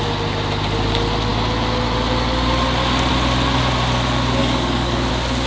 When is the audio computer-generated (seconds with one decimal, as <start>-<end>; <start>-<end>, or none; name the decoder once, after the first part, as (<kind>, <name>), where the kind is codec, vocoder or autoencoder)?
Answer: 4.4-5.1 (codec, DAC)